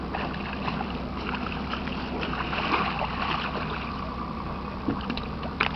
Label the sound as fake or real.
real